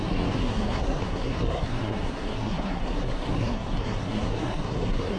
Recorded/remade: remade